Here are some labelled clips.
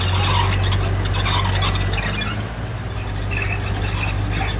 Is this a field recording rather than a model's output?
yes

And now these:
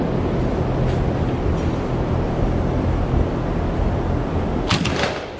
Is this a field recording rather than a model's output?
yes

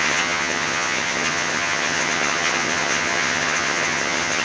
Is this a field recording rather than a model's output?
no